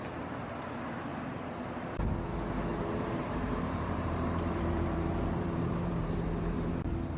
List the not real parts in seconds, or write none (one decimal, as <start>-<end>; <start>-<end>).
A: 1.1-2.0; 2.7-6.7